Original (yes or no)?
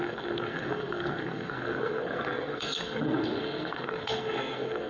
no